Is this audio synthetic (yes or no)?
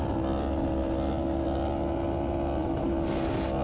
no